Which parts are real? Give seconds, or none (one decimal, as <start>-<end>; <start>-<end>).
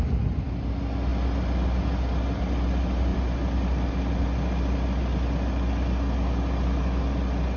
0.0-7.6